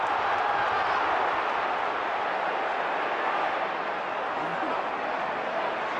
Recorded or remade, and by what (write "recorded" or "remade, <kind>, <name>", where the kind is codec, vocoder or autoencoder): recorded